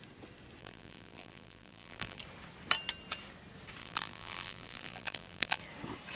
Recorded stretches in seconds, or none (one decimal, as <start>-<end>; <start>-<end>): 0.0-0.6; 2.2-3.8; 5.6-6.2